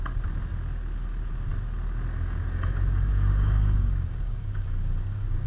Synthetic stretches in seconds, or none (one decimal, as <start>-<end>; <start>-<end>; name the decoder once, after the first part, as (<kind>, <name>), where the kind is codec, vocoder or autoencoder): 3.1-5.5 (codec, DAC)